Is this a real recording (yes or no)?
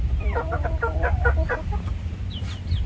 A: no